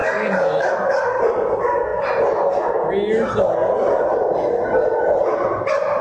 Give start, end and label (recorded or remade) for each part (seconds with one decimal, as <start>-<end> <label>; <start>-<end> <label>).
0.0-1.0 remade; 1.0-6.0 recorded